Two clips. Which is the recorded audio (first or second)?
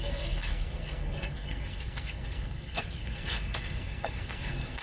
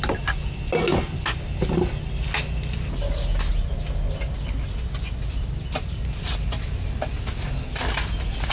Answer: second